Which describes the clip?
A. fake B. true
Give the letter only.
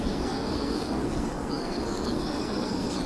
A